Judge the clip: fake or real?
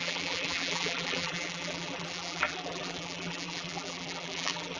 fake